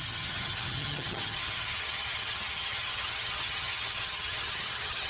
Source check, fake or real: fake